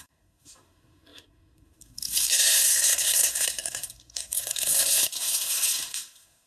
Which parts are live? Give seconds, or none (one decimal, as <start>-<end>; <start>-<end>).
none